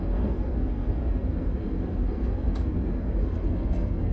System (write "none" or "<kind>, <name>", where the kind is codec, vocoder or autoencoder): codec, SNAC